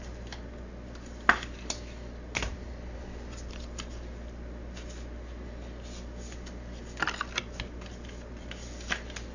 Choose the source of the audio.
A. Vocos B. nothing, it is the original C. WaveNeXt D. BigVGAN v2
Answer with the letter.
B